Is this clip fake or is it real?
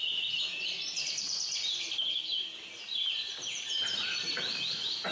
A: real